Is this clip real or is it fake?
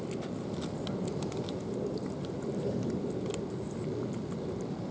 real